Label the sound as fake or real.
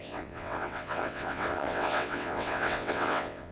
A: fake